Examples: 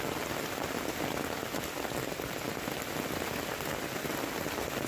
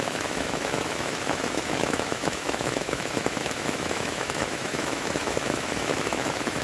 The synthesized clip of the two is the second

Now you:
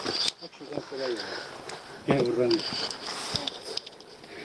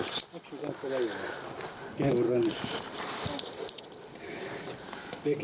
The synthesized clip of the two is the second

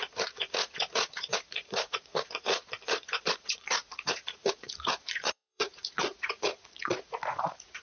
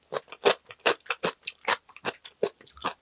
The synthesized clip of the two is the first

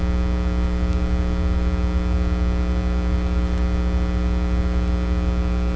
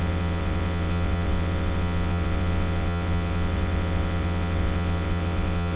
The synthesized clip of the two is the second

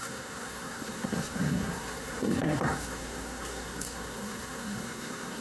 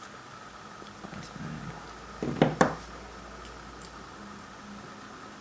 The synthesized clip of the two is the first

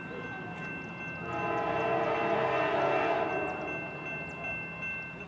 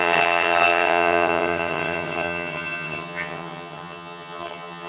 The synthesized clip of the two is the second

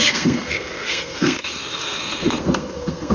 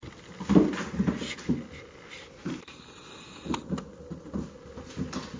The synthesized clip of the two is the first